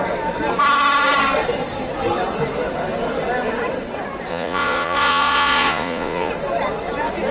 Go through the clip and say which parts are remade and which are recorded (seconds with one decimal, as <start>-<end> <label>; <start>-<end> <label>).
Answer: 0.0-4.3 recorded; 4.3-6.3 remade; 6.3-7.3 recorded